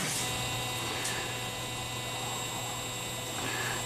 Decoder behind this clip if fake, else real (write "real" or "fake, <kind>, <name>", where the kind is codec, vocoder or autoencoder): real